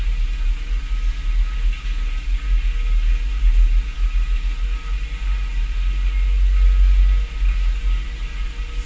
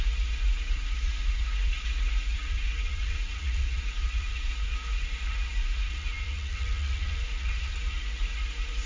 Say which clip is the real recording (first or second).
first